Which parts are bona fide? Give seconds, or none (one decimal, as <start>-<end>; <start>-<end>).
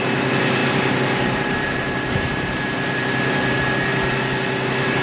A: 0.0-0.6; 3.6-5.0